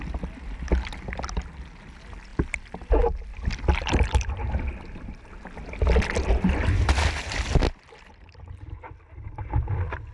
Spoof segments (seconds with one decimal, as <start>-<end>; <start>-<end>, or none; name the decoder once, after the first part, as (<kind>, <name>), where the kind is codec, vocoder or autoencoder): 2.3-2.9 (vocoder, BigVGAN v2); 3.3-7.8